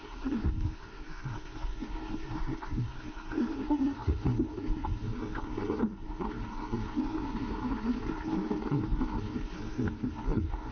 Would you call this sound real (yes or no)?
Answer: no